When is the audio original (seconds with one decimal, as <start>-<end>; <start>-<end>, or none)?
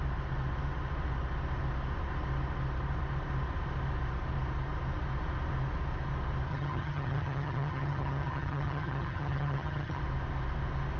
0.0-6.5; 10.0-11.0